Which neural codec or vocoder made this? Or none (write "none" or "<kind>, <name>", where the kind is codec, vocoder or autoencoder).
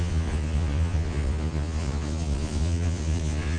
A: vocoder, Vocos